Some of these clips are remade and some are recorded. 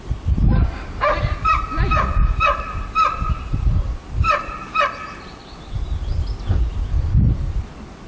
remade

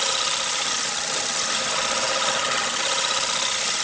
recorded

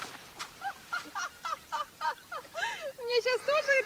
remade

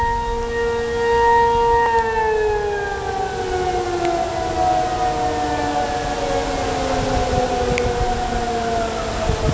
recorded